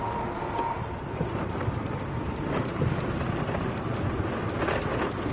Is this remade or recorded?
recorded